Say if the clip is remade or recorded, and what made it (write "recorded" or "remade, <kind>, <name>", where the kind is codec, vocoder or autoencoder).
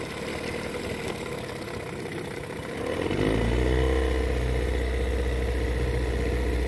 recorded